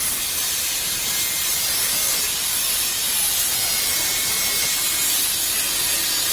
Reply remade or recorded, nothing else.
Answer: recorded